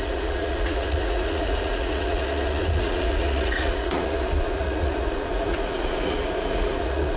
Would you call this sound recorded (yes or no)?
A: no